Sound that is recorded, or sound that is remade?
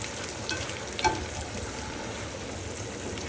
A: recorded